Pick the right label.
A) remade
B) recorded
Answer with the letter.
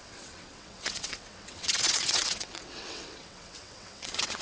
A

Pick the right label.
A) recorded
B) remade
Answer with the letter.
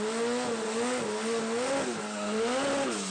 A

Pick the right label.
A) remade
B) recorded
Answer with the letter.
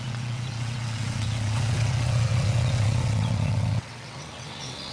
A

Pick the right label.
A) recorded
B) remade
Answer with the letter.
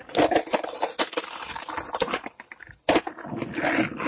A